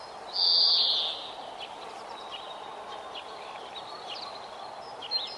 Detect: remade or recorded recorded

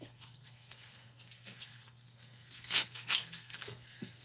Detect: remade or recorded remade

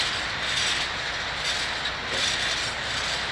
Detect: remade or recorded recorded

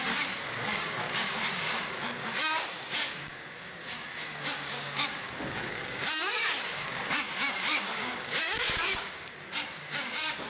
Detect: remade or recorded remade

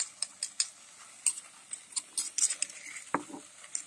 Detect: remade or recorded recorded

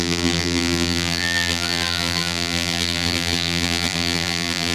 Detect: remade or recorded remade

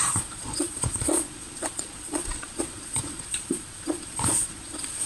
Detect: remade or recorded remade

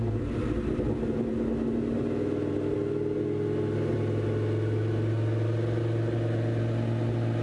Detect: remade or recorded recorded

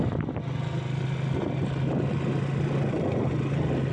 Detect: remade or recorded recorded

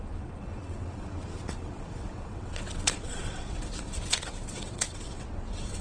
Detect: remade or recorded remade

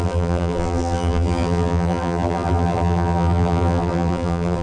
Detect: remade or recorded remade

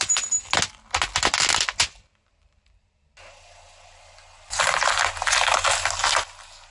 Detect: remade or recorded recorded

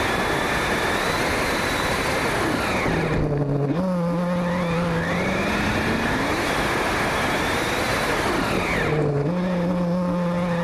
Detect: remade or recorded recorded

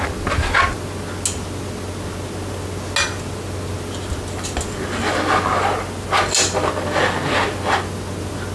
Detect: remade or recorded recorded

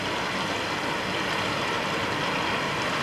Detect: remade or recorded recorded